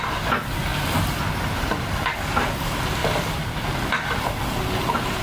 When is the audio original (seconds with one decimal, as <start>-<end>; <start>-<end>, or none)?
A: 0.0-3.0; 3.7-5.2